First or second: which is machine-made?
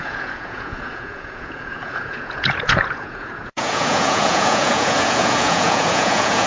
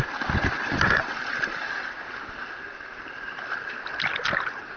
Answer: first